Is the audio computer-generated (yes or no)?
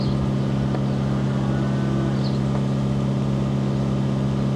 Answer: no